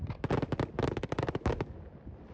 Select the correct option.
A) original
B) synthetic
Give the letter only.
B